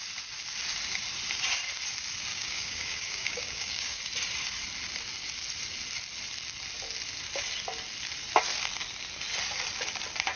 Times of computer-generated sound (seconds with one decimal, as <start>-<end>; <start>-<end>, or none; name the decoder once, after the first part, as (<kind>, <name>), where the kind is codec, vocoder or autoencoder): 2.3-4.0 (codec, DAC)